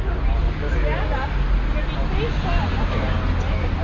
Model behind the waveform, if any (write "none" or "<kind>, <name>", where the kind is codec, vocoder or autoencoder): none